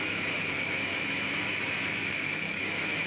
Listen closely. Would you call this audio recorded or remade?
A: remade